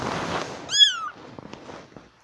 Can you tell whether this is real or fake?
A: real